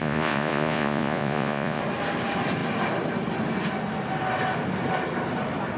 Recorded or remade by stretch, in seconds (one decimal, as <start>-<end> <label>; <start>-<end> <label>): 0.0-1.8 remade; 1.8-5.8 recorded